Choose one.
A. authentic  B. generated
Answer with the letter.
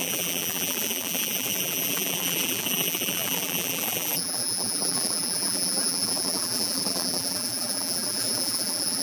B